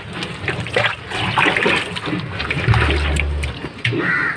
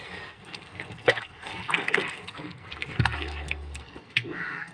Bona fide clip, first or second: first